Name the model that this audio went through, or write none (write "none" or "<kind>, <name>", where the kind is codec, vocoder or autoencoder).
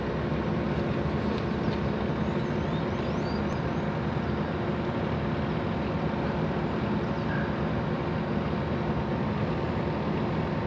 none